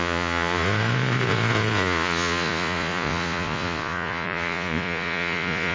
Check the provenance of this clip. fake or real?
fake